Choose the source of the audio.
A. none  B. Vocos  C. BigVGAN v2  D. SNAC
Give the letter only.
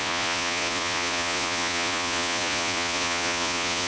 B